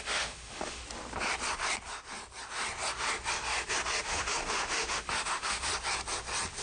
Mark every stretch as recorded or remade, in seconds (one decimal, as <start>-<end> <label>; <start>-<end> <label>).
0.0-0.8 remade; 0.8-4.0 recorded; 4.0-5.7 remade; 5.7-6.6 recorded